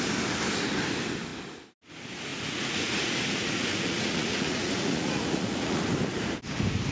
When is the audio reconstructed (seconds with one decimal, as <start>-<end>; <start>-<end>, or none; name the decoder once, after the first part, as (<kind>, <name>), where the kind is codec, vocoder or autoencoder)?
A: 2.3-5.8 (vocoder, Vocos)